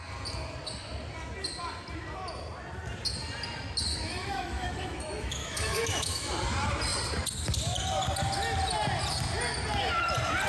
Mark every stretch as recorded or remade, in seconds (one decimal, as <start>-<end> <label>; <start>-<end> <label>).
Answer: 0.0-3.9 recorded; 3.9-6.3 remade; 6.3-10.5 recorded